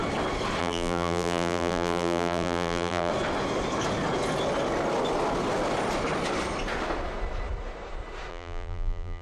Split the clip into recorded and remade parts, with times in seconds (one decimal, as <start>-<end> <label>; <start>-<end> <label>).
0.0-0.6 recorded; 0.6-3.1 remade; 3.1-8.3 recorded; 8.3-9.2 remade